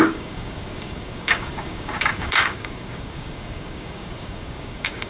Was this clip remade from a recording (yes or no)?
yes